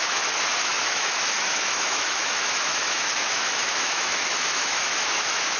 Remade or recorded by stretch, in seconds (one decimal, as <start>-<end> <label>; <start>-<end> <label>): 0.0-5.6 remade